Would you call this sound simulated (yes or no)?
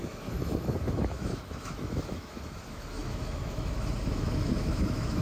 yes